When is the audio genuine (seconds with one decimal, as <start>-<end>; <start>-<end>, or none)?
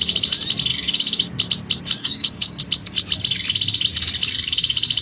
0.0-0.7; 1.2-2.0; 2.6-5.0